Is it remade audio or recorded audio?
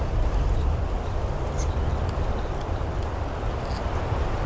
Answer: recorded